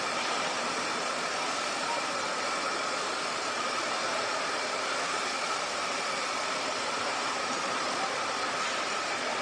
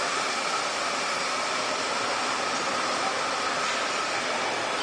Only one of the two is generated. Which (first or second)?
first